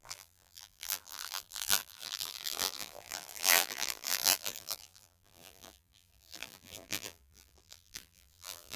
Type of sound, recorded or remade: remade